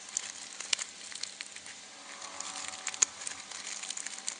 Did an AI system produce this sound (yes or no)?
no